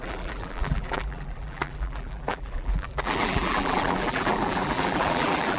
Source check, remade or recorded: remade